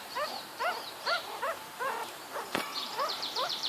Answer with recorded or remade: remade